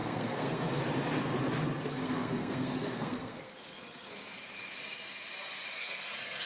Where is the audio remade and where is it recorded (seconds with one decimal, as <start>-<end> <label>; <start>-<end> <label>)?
0.0-0.8 remade; 0.8-1.9 recorded; 1.9-4.1 remade; 4.1-5.8 recorded; 5.8-6.5 remade